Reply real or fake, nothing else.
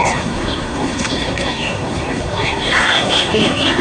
fake